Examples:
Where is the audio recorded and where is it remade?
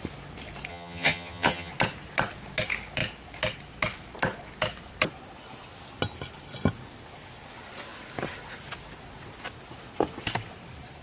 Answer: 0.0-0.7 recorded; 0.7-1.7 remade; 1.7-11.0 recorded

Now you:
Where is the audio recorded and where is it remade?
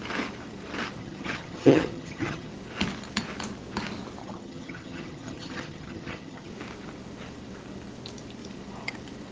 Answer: 0.0-1.0 recorded; 1.0-2.5 remade; 2.5-4.2 recorded; 4.2-6.5 remade; 6.5-9.3 recorded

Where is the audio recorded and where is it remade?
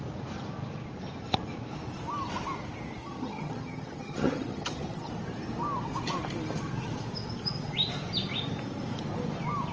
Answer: 0.0-3.0 recorded; 3.0-5.1 remade; 5.1-9.7 recorded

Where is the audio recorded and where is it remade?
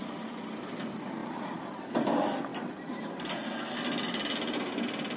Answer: 0.0-5.2 recorded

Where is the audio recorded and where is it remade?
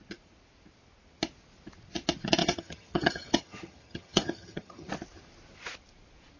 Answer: 0.0-2.4 recorded; 2.4-4.9 remade; 4.9-6.4 recorded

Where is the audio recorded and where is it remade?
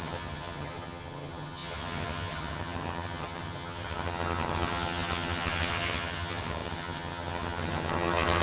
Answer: 0.0-8.4 remade